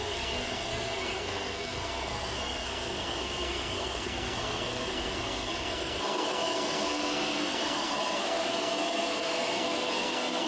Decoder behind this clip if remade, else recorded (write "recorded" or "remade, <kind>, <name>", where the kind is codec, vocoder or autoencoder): remade, codec, SNAC